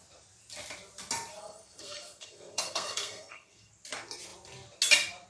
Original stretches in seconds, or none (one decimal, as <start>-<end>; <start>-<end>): 0.0-1.3; 3.7-5.3